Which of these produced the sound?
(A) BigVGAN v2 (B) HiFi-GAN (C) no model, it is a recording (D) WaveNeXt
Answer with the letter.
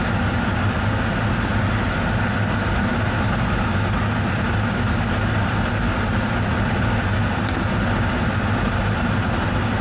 C